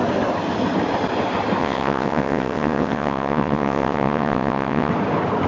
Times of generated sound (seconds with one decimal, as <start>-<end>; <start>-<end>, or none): 1.6-4.9